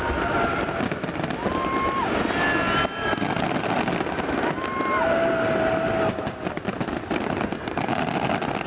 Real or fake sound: real